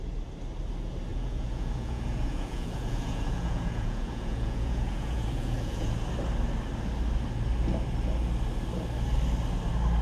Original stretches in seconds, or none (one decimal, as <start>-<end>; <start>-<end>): 0.0-1.1; 5.9-10.0